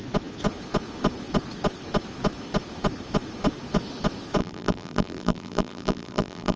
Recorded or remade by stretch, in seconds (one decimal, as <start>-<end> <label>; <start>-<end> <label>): 0.0-4.4 recorded; 4.4-6.6 remade